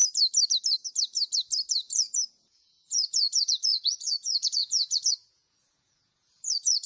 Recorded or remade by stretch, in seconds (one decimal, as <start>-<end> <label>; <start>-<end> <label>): 0.0-1.7 recorded; 1.7-6.9 remade